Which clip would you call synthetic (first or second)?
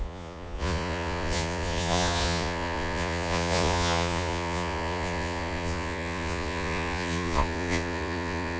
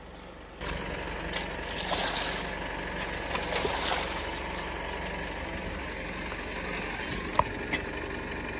first